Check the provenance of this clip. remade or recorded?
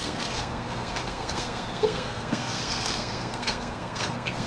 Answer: remade